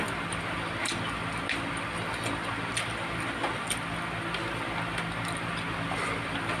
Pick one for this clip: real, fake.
real